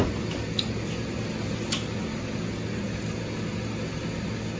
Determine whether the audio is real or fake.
real